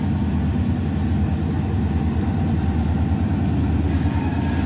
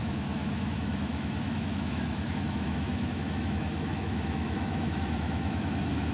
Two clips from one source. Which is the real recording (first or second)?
first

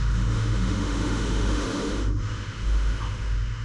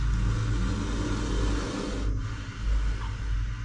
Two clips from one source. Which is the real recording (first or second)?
second